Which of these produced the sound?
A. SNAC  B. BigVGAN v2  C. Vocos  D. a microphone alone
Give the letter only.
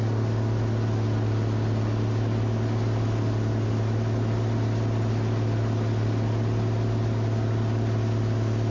D